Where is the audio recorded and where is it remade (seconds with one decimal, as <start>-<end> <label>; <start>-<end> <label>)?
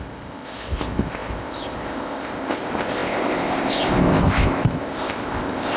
0.0-5.8 remade